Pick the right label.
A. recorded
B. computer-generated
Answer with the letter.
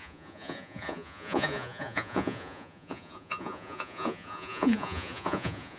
B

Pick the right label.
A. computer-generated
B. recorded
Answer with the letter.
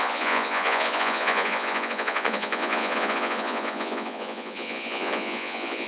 A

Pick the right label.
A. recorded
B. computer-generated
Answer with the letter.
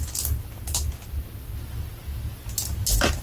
A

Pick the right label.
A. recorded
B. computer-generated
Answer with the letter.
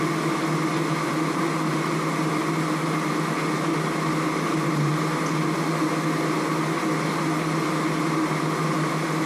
A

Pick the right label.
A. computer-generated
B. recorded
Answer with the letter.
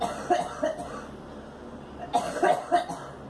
A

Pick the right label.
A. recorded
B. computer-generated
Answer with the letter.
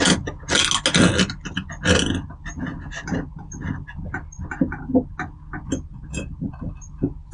A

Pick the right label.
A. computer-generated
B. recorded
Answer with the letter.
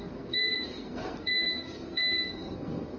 A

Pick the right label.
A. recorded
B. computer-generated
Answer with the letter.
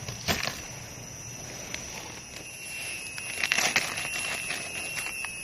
A